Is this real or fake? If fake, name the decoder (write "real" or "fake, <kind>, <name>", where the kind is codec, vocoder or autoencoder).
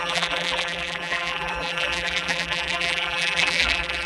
fake, vocoder, BigVGAN v2